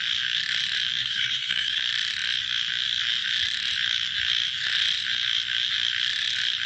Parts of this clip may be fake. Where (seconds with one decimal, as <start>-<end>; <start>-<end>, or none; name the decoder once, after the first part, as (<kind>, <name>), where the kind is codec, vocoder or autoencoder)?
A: 1.0-1.8 (codec, SNAC)